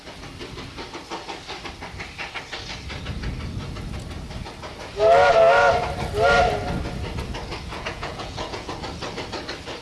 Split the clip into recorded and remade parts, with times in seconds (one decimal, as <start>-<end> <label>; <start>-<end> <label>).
0.0-7.7 recorded; 7.7-8.7 remade; 8.7-9.8 recorded